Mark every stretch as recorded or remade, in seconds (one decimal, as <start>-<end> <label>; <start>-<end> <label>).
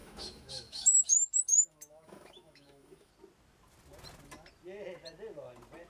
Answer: 0.0-3.1 remade; 3.1-5.9 recorded